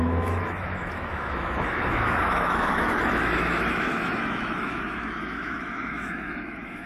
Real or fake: fake